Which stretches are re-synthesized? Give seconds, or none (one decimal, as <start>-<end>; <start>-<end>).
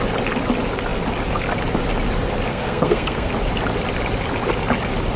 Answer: 2.5-3.3